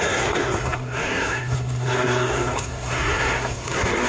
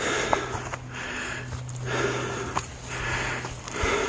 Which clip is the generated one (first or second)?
first